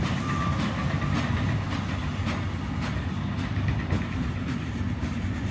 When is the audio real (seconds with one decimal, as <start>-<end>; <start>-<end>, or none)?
0.8-3.8